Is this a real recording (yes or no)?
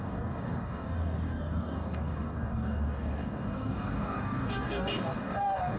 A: no